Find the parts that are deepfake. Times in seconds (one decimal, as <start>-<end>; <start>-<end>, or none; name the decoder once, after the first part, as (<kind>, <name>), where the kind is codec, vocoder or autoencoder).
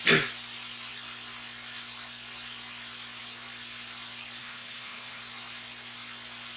4.4-5.2 (codec, HILCodec)